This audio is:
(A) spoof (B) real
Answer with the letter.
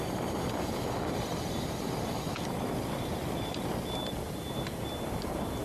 B